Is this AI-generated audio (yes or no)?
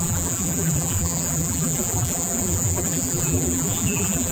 yes